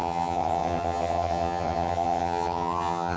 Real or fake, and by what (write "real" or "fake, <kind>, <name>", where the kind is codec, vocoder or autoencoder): fake, vocoder, HiFi-GAN